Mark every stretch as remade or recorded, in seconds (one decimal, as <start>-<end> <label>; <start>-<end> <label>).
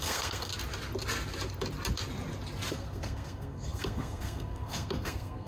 0.0-0.5 remade; 0.5-2.7 recorded; 2.7-5.5 remade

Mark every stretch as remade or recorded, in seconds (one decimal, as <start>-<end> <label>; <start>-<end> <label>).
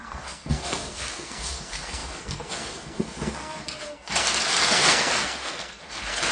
0.0-6.3 remade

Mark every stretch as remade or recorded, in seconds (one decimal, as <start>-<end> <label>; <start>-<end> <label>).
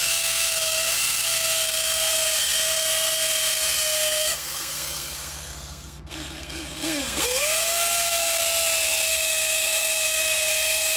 0.0-8.4 remade; 8.4-9.1 recorded; 9.1-11.0 remade